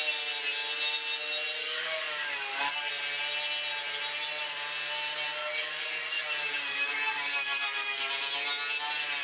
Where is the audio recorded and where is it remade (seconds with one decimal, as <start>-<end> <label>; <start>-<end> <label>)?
0.0-1.6 recorded; 1.6-2.9 remade; 2.9-5.4 recorded; 5.4-6.3 remade; 6.3-6.7 recorded; 6.7-8.1 remade; 8.1-9.2 recorded